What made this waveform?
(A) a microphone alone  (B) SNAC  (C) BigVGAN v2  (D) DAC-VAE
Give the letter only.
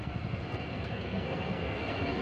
B